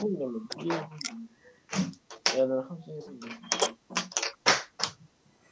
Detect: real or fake real